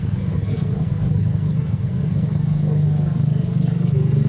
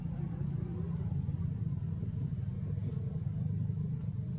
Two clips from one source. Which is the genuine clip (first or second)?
second